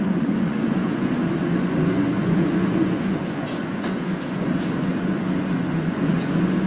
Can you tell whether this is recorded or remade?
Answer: remade